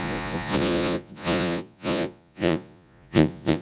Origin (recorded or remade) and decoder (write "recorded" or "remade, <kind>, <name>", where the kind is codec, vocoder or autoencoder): remade, vocoder, Vocos